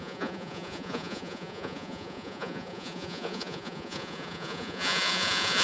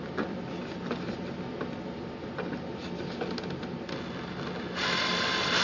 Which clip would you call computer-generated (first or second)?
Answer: first